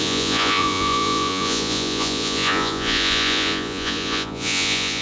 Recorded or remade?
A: remade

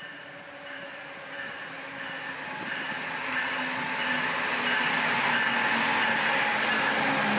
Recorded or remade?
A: recorded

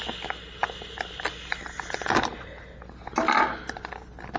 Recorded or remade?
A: recorded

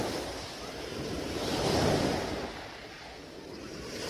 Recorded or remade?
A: recorded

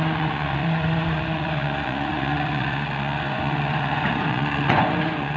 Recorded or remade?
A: remade